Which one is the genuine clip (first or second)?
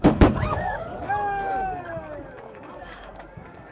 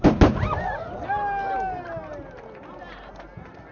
second